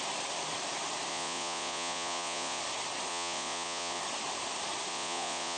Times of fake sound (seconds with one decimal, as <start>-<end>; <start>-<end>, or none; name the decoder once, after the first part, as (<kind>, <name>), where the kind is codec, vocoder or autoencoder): 1.1-2.6 (vocoder, Vocos); 3.1-4.0; 4.9-5.6